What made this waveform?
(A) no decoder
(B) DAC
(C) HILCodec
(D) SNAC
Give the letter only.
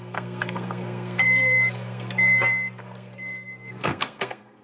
D